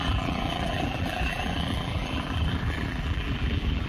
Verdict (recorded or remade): remade